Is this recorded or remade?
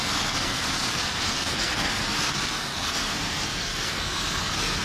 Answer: remade